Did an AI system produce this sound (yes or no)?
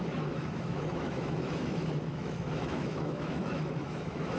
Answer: yes